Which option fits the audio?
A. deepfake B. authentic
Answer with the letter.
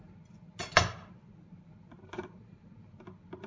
B